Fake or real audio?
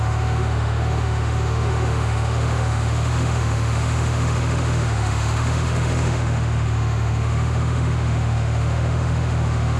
fake